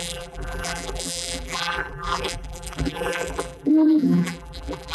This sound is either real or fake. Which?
fake